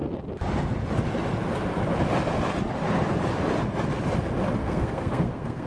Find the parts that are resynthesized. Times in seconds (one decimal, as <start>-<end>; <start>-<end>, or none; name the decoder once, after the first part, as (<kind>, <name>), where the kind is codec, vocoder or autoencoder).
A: 4.6-5.7 (codec, SNAC)